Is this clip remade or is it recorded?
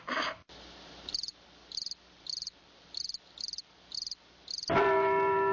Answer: remade